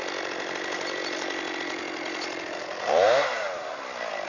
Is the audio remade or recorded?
recorded